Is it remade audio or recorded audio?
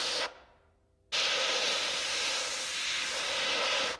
recorded